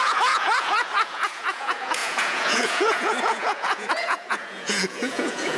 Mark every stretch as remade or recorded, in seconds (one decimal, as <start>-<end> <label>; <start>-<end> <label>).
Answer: 0.0-5.6 remade